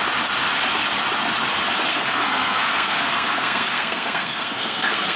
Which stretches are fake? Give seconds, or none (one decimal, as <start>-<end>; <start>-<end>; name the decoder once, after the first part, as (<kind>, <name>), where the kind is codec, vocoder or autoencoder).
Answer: 1.9-5.2 (codec, SNAC)

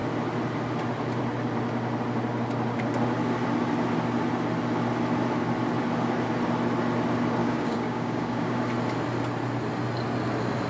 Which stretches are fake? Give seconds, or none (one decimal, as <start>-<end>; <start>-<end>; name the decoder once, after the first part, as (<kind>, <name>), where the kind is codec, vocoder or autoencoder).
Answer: 7.4-8.6 (codec, DAC)

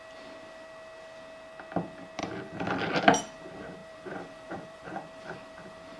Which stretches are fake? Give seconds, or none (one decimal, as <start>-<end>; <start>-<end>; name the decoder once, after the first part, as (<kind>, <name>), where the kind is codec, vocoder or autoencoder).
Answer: 2.2-3.0 (vocoder, BigVGAN v2); 3.8-6.0

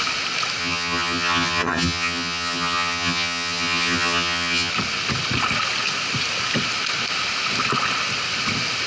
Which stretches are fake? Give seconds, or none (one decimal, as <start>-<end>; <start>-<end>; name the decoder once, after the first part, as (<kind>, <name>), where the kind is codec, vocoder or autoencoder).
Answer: 0.6-4.7 (vocoder, HiFi-GAN)

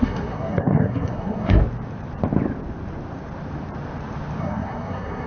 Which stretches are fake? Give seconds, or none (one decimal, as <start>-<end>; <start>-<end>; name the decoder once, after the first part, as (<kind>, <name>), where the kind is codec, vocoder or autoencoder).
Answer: 0.0-1.6 (codec, SNAC); 4.4-5.3

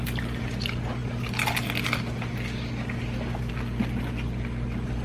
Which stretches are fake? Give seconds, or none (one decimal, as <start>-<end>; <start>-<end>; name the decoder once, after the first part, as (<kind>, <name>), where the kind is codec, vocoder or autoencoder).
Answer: none